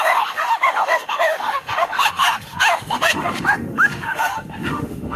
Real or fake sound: fake